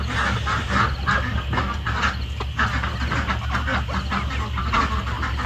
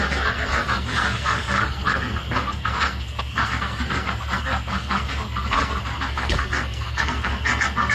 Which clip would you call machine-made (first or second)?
second